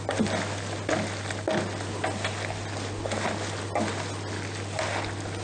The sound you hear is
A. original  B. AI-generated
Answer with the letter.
A